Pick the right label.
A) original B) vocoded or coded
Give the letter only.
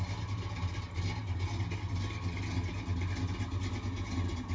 A